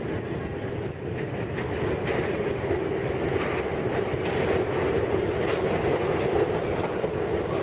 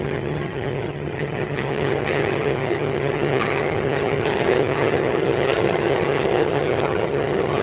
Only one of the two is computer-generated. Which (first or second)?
second